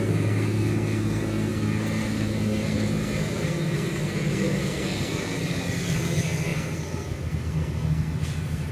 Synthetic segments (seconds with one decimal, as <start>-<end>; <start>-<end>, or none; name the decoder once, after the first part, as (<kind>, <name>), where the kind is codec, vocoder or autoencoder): 0.0-8.7 (codec, SNAC)